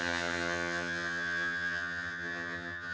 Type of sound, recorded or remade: remade